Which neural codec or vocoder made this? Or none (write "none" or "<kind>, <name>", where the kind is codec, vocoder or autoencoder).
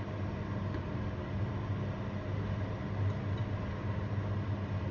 none